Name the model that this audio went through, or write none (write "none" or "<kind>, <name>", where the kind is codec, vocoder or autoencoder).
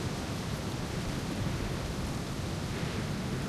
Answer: none